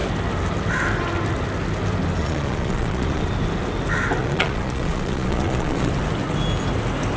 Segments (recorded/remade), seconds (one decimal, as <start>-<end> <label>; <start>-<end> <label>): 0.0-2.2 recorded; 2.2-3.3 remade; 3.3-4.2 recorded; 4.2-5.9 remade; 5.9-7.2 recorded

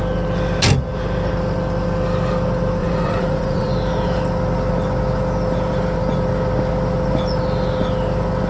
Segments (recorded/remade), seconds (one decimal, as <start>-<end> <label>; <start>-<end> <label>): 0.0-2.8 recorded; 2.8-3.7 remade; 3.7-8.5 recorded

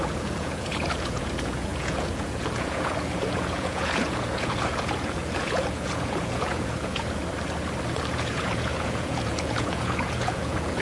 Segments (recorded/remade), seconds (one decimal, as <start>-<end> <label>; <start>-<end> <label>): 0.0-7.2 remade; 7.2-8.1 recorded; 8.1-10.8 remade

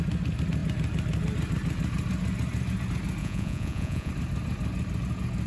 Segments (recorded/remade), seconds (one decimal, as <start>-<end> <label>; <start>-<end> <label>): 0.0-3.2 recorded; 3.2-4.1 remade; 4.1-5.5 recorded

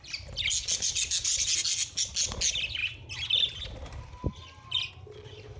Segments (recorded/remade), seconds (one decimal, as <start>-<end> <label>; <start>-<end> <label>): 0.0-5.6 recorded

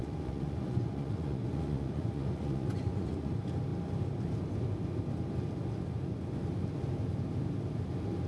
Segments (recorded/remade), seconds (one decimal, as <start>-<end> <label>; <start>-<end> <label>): 0.0-3.3 remade; 3.3-8.3 recorded

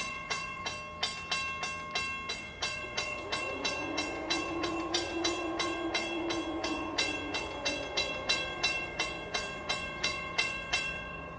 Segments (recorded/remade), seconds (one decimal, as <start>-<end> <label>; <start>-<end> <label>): 0.0-0.7 remade; 0.7-2.3 recorded; 2.3-11.4 remade